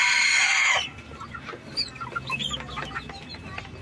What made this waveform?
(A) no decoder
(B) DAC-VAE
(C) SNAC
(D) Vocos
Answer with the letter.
A